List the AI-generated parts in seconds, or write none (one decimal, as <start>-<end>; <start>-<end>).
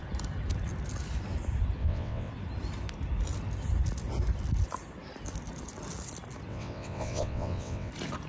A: 1.8-2.3; 6.5-7.9